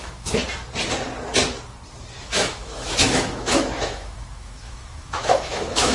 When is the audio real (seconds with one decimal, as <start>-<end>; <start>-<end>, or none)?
0.4-2.2